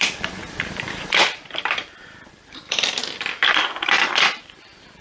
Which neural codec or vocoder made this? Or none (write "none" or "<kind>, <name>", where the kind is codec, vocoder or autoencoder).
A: vocoder, BigVGAN v2